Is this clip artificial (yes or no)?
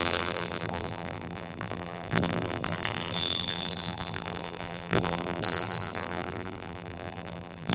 yes